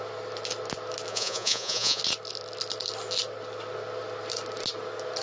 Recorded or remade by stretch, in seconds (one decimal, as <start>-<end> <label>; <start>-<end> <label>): 0.0-1.1 recorded; 1.1-2.0 remade; 2.0-5.2 recorded